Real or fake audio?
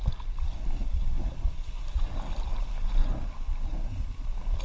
real